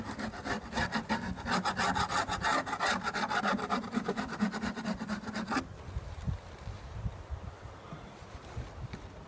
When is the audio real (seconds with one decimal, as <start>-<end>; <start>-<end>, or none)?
0.0-9.3